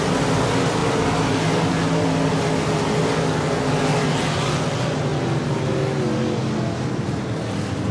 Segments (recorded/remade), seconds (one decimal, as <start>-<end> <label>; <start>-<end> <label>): 0.0-7.9 recorded